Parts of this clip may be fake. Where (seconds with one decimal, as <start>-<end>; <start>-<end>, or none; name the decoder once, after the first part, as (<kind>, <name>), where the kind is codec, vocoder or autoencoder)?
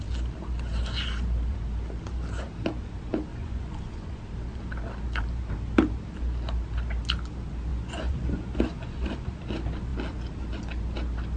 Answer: 3.3-4.2 (vocoder, Vocos); 7.7-9.3